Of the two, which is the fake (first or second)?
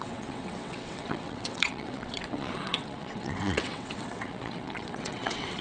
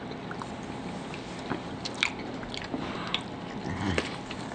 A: first